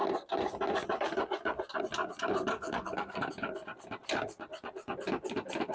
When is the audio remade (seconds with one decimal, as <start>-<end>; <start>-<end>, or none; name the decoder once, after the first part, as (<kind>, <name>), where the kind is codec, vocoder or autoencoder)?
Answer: 2.5-3.3 (codec, SNAC)